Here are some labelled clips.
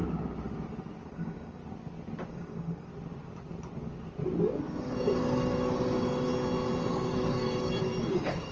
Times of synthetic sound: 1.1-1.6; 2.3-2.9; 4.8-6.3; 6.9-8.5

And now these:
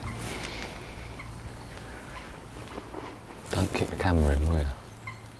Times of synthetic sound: 1.5-2.7

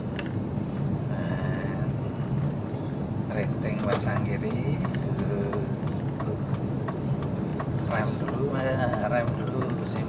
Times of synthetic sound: none

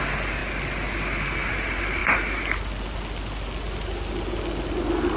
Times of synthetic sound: none